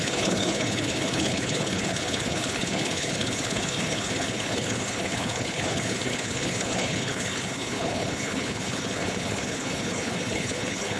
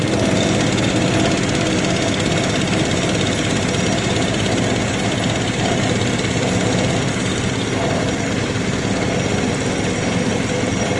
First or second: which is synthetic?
first